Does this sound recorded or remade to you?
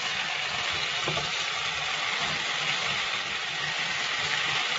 recorded